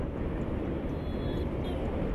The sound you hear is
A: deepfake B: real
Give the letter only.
B